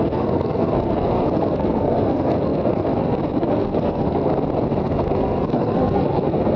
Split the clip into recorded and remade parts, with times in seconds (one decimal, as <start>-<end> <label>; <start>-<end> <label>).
0.0-4.3 remade; 4.3-4.8 recorded; 4.8-6.6 remade